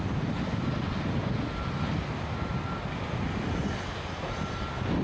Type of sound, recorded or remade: recorded